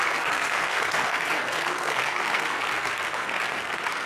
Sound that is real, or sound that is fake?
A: fake